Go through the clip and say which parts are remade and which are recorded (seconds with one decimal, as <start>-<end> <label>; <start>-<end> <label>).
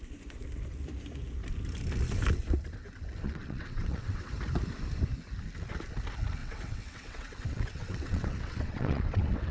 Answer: 0.0-3.2 recorded; 3.2-4.3 remade; 4.3-6.4 recorded; 6.4-9.5 remade